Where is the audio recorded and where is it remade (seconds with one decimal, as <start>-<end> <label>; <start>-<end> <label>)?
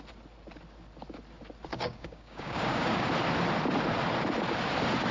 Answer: 0.0-1.7 recorded; 1.7-3.1 remade; 3.1-5.1 recorded